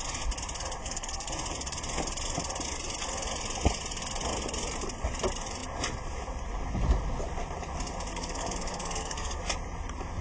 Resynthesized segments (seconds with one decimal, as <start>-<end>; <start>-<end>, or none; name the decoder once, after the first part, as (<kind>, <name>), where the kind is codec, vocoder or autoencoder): 0.8-1.3 (codec, SNAC); 8.1-9.4